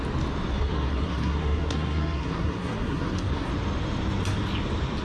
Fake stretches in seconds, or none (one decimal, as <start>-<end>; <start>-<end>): 0.5-3.5